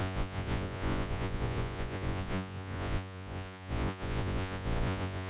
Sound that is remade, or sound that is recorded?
remade